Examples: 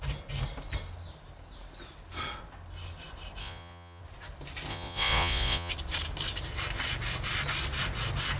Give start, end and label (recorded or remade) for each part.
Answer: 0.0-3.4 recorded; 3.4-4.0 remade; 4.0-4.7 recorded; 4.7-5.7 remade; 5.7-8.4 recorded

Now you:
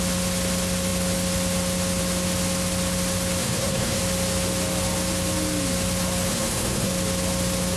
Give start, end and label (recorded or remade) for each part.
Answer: 0.0-3.4 recorded; 3.4-4.0 remade; 4.0-6.3 recorded; 6.3-6.9 remade; 6.9-7.8 recorded

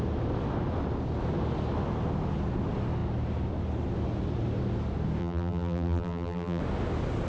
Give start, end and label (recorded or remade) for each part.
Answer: 0.0-5.2 recorded; 5.2-6.6 remade; 6.6-7.3 recorded

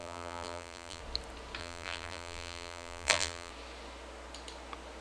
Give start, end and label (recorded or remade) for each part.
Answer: 0.0-1.0 remade; 1.0-1.6 recorded; 1.6-3.5 remade; 3.5-5.0 recorded

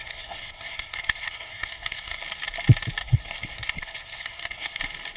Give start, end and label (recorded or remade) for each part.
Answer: 0.0-2.2 remade; 2.2-3.0 recorded; 3.0-4.8 remade; 4.8-5.2 recorded

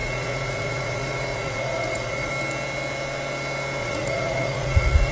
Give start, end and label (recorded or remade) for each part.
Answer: 0.0-2.3 remade; 2.3-3.8 recorded; 3.8-5.1 remade